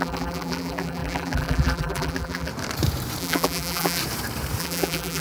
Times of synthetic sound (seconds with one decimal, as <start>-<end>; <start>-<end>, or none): 0.0-2.5; 3.2-4.0; 4.6-5.2

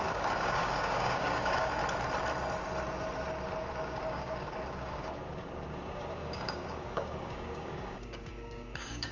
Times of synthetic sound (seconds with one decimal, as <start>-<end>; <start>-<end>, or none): 0.0-1.8; 3.7-9.1

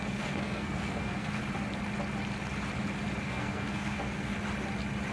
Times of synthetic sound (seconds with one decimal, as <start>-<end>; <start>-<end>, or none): 0.0-1.4; 3.2-4.3

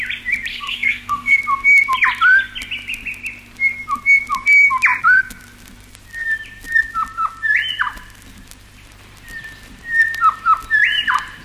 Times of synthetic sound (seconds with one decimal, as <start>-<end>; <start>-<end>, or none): 0.5-1.4

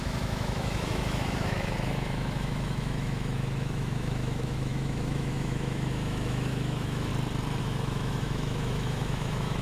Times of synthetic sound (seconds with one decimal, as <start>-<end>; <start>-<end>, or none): 0.0-7.1; 7.6-9.6

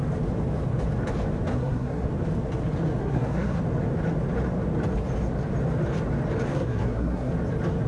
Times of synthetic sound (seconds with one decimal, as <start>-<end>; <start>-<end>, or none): 1.5-2.1; 3.0-3.6; 6.5-7.3